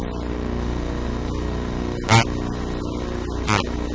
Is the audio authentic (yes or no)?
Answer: yes